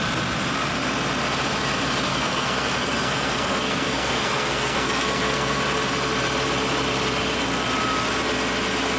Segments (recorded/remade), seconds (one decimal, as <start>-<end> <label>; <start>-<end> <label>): 0.0-2.1 recorded; 2.1-5.6 remade; 5.6-9.0 recorded